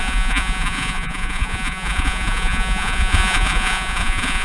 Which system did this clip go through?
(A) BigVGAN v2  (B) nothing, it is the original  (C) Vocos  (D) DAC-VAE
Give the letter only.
C